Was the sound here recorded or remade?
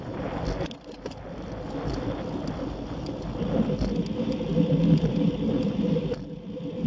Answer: recorded